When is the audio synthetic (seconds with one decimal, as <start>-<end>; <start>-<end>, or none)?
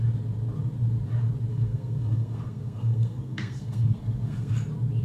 1.5-4.5